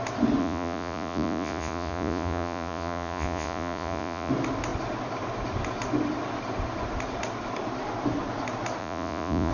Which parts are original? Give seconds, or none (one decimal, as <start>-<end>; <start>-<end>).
0.0-0.4; 4.3-8.8